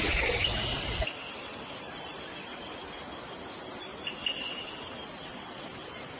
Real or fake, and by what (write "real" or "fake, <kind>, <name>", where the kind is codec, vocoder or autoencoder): real